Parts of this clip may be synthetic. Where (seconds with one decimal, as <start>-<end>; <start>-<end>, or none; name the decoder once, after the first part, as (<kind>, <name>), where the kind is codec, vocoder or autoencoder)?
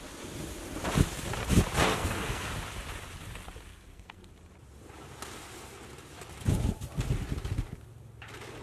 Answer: 1.9-2.5 (codec, SNAC); 3.7-4.3